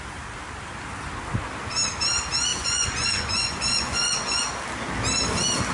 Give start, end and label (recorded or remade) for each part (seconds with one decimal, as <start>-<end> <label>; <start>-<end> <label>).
0.0-2.5 recorded; 2.5-4.4 remade; 4.4-5.7 recorded